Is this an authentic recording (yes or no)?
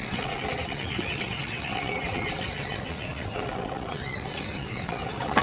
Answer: no